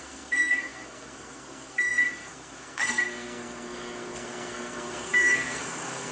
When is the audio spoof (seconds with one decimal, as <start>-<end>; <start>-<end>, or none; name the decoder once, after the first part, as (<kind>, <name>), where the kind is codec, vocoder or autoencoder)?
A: 0.0-6.1 (codec, SNAC)